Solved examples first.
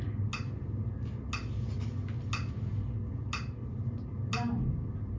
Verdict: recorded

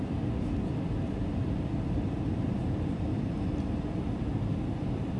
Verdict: remade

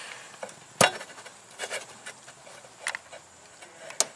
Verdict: recorded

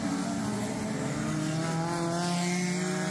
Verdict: recorded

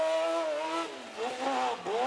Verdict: recorded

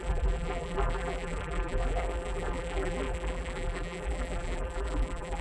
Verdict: remade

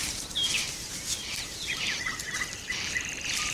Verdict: remade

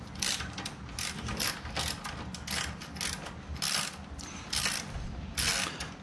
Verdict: recorded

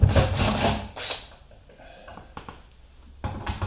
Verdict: recorded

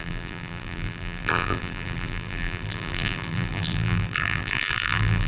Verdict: remade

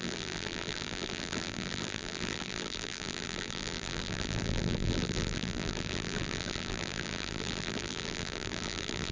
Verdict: remade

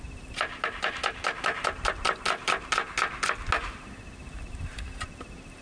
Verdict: recorded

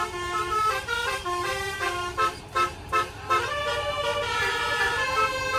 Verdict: remade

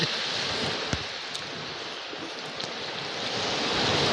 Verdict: recorded